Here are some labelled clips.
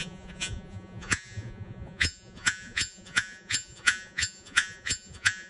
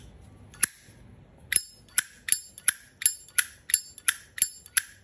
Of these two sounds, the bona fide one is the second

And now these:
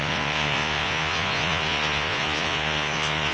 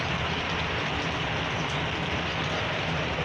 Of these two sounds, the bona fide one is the second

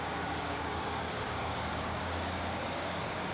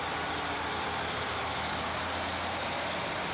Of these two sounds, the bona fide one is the second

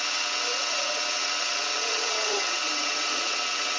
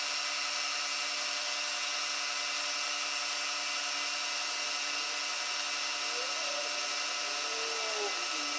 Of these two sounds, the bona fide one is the second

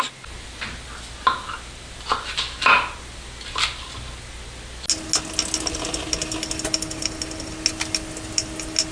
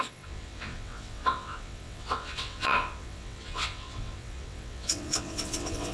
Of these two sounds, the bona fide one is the first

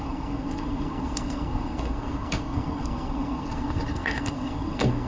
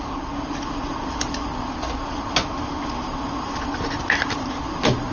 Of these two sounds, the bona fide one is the second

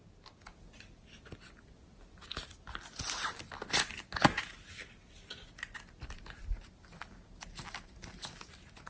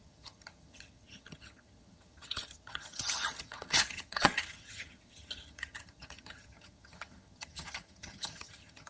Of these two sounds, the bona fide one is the first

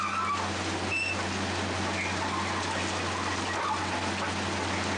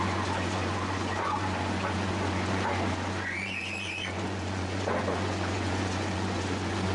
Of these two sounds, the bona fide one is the first